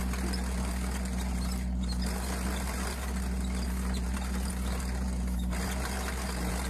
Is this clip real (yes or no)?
yes